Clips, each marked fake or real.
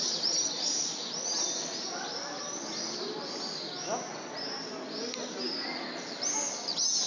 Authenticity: real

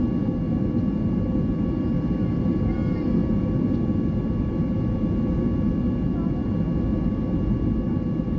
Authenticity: real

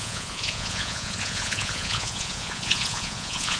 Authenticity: fake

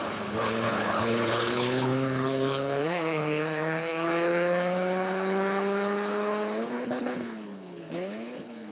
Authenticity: fake